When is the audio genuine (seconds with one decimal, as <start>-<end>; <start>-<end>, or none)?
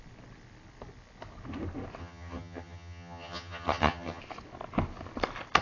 0.0-2.0; 4.2-5.6